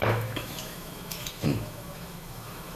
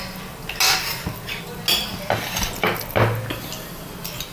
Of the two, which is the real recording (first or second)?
second